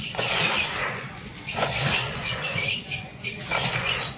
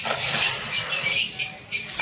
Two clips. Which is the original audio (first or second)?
second